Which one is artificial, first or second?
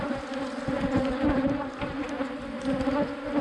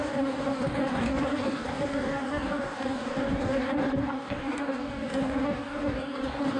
second